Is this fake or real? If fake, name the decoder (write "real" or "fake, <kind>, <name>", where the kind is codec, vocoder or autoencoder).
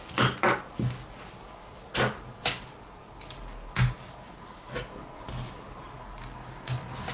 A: real